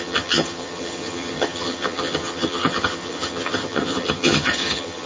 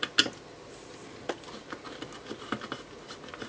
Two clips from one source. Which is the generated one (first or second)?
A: first